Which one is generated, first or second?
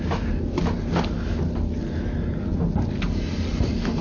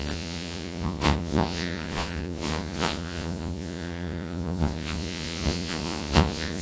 second